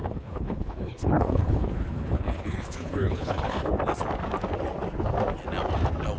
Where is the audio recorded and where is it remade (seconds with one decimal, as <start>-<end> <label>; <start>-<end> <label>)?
0.0-3.7 remade; 3.7-6.2 recorded